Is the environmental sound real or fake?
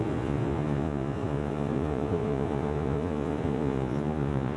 fake